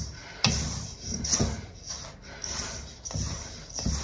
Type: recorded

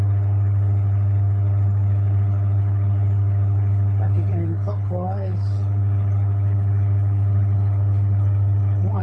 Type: remade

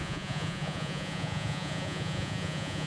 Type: remade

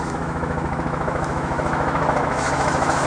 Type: remade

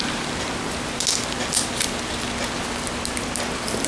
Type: recorded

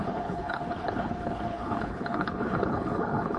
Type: remade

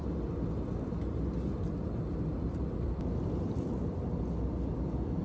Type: recorded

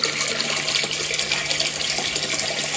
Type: recorded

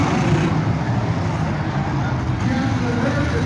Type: recorded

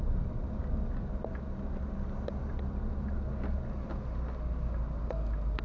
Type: recorded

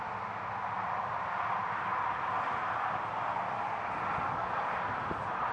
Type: recorded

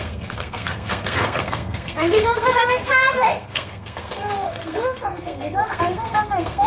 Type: remade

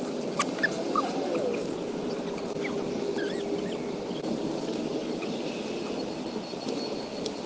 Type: recorded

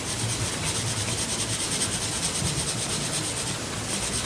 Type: recorded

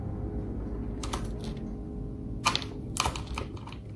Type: recorded